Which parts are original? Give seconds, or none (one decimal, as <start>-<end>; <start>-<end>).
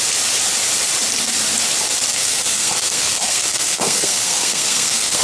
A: 0.0-2.1